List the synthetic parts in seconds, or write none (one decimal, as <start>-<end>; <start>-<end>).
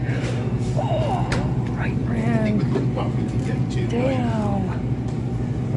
none